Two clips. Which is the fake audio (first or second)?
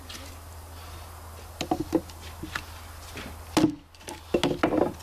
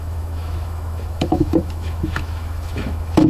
second